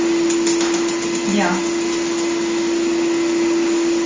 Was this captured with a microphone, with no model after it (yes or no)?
yes